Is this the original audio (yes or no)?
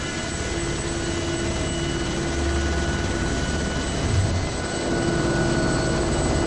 yes